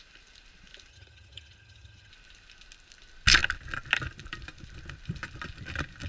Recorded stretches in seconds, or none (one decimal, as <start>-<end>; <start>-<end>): 0.0-0.9; 2.1-6.1